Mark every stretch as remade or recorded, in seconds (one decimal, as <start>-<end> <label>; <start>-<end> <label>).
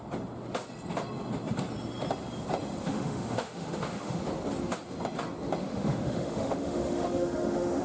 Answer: 0.0-2.8 recorded; 2.8-4.2 remade; 4.2-5.6 recorded; 5.6-7.8 remade